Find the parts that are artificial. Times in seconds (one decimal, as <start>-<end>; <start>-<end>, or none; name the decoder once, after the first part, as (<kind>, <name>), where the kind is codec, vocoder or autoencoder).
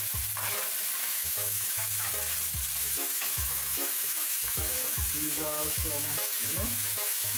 1.0-2.1 (autoencoder, DAC-VAE); 2.8-7.4